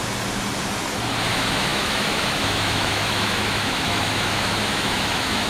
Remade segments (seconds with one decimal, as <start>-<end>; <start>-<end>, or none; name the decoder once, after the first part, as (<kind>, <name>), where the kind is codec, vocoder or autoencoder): 1.2-5.5 (autoencoder, DAC-VAE)

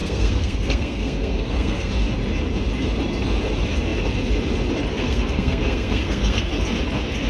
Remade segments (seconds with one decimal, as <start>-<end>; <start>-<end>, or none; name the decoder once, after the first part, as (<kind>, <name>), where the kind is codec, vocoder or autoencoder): 0.0-1.9 (codec, SNAC); 4.9-6.5

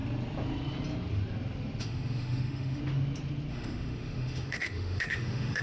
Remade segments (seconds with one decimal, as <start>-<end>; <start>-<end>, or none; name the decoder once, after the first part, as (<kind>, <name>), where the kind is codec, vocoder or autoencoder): 1.8-2.8 (autoencoder, DAC-VAE); 3.5-5.6

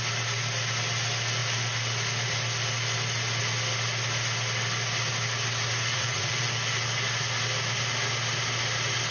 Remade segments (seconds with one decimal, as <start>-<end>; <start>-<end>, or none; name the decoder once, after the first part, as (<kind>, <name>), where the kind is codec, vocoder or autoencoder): 5.9-6.5 (vocoder, Vocos)

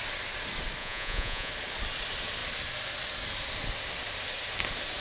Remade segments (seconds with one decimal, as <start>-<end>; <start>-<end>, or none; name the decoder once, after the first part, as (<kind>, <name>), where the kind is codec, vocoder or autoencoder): 0.8-1.5 (vocoder, Vocos)

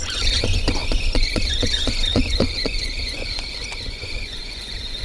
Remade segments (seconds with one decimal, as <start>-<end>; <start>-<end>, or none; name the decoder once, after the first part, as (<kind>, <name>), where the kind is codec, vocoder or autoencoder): 0.0-5.0 (vocoder, Vocos)

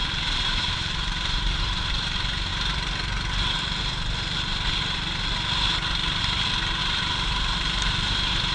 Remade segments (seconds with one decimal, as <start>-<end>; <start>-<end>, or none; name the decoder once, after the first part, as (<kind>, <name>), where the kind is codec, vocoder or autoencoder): 0.0-2.5 (vocoder, BigVGAN v2); 6.8-8.5